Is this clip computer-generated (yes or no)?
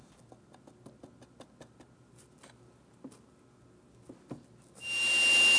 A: no